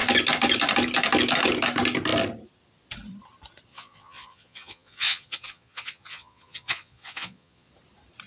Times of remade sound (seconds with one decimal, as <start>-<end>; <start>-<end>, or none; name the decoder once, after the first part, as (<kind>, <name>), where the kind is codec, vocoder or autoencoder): 3.7-7.7 (vocoder, Vocos)